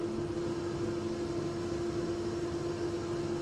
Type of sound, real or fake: real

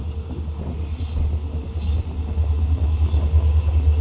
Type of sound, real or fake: real